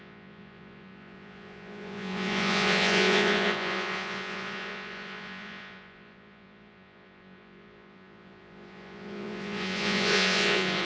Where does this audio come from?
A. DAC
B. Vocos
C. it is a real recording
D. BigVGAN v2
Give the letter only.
B